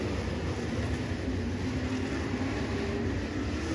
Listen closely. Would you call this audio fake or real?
real